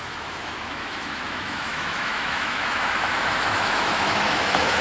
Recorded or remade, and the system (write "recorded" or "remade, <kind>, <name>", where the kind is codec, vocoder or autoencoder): remade, autoencoder, DAC-VAE